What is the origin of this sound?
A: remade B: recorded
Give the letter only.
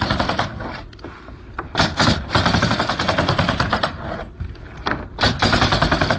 B